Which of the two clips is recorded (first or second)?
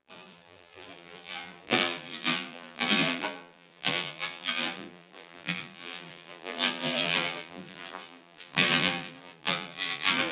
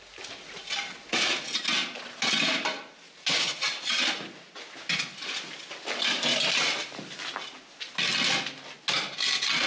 second